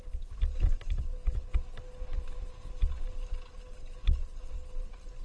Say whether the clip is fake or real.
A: real